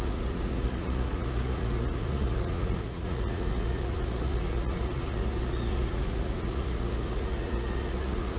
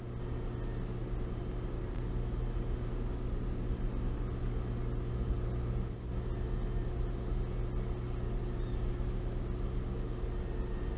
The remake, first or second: first